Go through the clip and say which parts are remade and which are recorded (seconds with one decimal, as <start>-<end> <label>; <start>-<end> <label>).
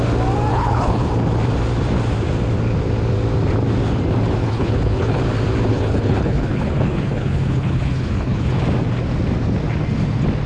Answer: 0.0-0.5 recorded; 0.5-1.1 remade; 1.1-4.4 recorded; 4.4-5.2 remade; 5.2-5.7 recorded; 5.7-8.6 remade; 8.6-10.5 recorded